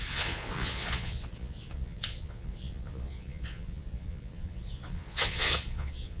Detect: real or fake fake